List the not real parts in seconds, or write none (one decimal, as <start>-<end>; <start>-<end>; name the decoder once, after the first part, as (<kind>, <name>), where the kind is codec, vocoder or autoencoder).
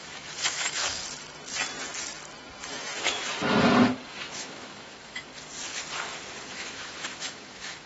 0.0-1.0 (autoencoder, DAC-VAE); 2.7-3.2; 4.1-5.3; 6.5-7.9